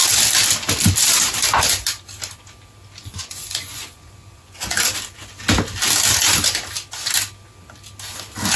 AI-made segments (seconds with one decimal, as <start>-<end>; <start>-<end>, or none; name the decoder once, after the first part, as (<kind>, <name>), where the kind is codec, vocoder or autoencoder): 3.0-4.9 (vocoder, Vocos)